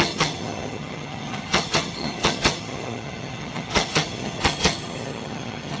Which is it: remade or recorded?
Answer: remade